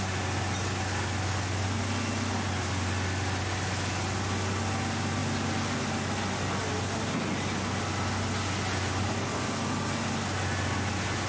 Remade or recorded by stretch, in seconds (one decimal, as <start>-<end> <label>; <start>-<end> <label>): 0.0-11.3 recorded